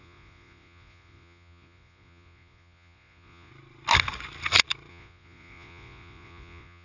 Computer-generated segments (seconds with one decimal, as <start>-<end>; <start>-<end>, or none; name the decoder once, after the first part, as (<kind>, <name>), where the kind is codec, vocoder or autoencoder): 0.0-3.5 (vocoder, Vocos); 4.9-6.8